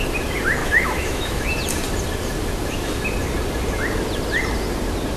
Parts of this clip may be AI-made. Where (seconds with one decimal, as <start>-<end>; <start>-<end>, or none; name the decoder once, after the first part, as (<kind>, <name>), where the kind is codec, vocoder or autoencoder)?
0.6-1.4 (autoencoder, DAC-VAE)